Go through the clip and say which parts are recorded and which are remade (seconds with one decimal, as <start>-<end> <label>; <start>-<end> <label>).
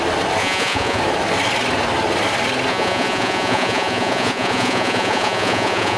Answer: 0.0-0.4 recorded; 0.4-1.0 remade; 1.0-2.7 recorded; 2.7-6.0 remade